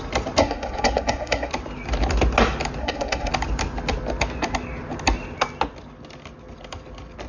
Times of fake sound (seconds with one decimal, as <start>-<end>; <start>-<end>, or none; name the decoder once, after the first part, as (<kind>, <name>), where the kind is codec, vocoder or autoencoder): 0.4-1.5 (codec, SNAC); 2.8-3.3